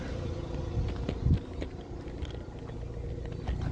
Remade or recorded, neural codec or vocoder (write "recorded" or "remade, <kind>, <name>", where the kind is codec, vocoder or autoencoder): recorded